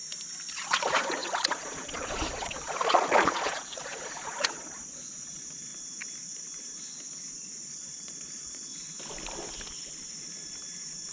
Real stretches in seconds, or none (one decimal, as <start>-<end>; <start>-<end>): 0.0-0.5; 5.7-7.6; 8.7-11.1